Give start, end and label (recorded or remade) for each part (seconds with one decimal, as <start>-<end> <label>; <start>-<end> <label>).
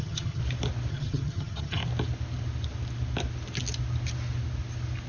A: 0.0-0.4 remade; 0.4-0.9 recorded; 0.9-1.8 remade; 1.8-5.1 recorded